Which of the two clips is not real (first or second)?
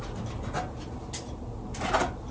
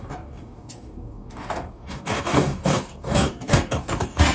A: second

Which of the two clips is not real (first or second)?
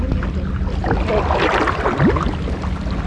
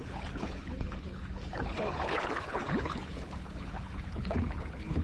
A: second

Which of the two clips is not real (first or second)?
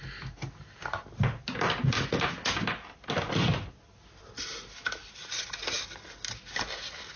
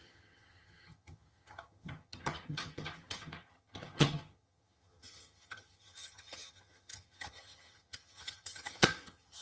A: second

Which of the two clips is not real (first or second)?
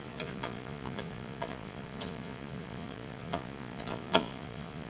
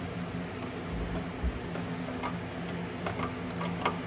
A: first